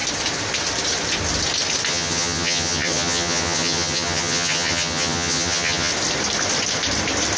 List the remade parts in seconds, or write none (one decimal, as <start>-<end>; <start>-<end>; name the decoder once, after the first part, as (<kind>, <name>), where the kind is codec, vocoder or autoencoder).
1.9-5.9 (vocoder, HiFi-GAN)